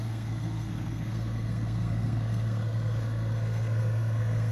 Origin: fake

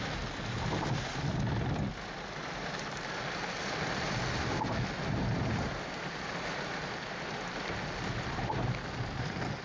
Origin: real